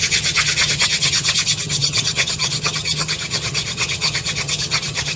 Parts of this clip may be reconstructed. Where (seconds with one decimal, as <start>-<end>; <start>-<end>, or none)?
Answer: 0.0-5.2